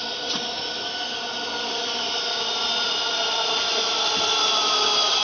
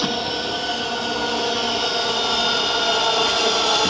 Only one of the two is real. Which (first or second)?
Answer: second